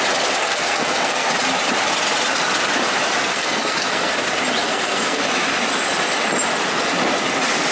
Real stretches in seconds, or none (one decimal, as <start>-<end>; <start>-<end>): 0.0-0.4; 1.3-3.2; 4.1-4.6; 5.2-7.7